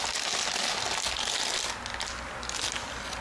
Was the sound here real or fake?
real